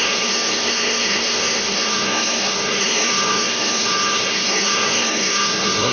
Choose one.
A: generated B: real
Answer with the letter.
A